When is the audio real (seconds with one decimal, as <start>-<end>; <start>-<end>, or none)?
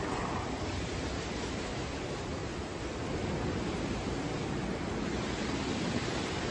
2.4-4.5